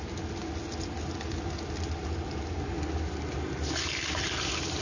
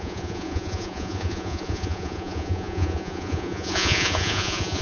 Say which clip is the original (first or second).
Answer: first